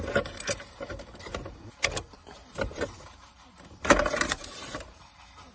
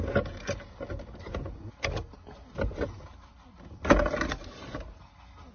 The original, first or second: second